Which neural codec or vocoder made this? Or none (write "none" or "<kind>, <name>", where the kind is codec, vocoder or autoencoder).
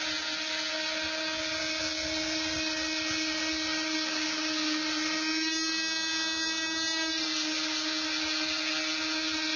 none